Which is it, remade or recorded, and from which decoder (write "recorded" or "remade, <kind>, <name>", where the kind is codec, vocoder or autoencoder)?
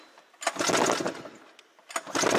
recorded